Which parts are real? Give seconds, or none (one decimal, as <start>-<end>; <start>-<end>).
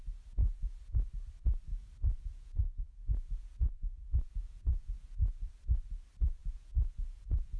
0.0-0.4; 1.1-1.7; 5.5-6.4